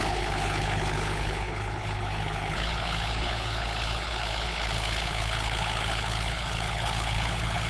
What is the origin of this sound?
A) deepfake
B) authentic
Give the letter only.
A